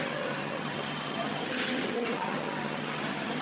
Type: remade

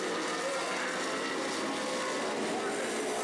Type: recorded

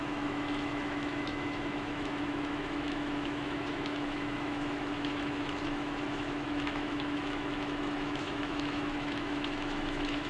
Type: remade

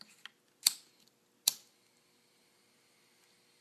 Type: recorded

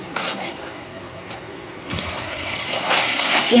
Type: remade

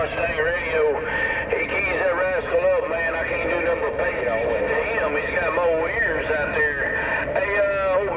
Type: recorded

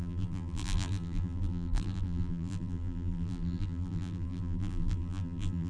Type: remade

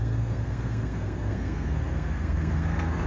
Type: remade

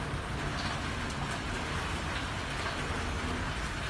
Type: recorded